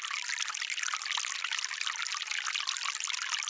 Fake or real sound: real